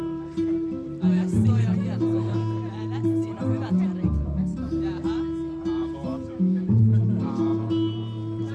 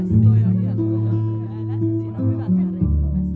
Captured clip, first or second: second